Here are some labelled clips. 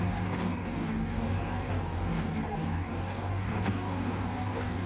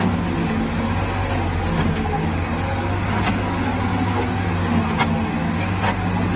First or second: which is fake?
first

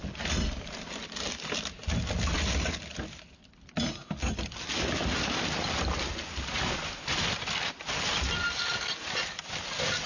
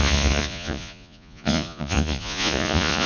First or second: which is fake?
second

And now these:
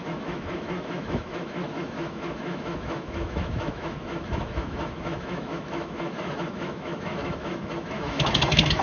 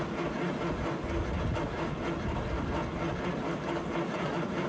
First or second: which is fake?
first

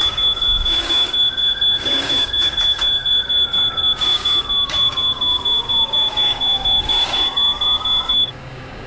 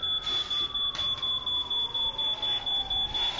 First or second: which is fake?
first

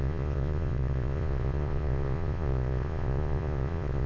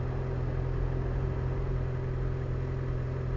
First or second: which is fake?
first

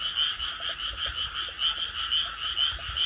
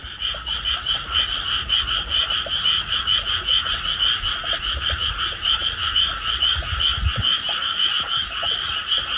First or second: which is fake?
second